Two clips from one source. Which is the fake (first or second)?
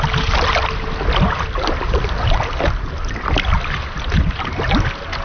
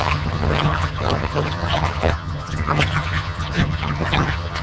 second